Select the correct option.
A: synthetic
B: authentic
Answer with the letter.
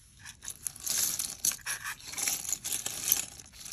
B